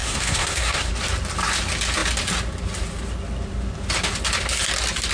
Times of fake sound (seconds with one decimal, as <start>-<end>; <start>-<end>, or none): 0.0-0.9